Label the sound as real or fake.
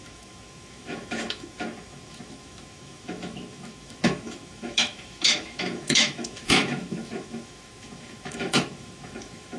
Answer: fake